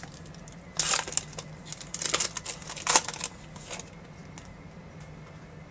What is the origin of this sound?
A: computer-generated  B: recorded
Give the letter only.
B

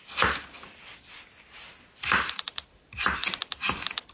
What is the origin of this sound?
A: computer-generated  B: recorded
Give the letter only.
B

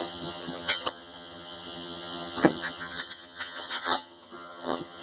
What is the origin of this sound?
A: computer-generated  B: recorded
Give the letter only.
A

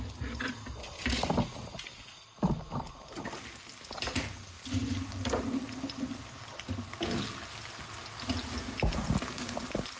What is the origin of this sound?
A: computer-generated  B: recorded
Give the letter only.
B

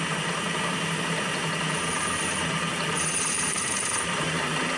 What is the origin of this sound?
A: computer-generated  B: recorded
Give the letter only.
A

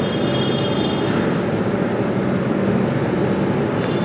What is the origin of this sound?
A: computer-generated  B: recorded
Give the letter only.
B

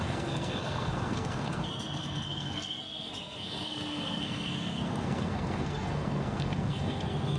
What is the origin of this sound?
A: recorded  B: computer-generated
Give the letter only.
B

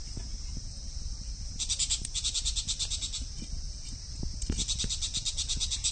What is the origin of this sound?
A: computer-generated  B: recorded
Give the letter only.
B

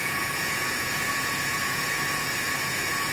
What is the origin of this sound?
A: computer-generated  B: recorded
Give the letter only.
A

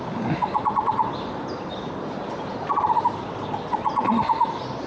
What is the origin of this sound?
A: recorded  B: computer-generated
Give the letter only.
A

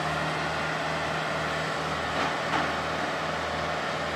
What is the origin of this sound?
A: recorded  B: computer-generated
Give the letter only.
A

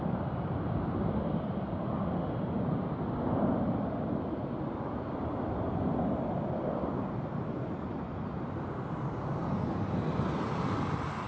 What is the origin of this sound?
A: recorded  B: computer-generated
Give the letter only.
A